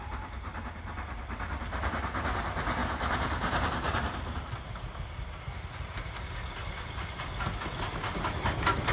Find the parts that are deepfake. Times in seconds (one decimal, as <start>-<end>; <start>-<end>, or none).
2.8-4.7